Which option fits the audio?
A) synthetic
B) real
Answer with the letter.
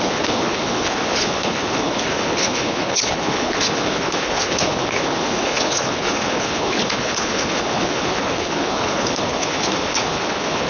A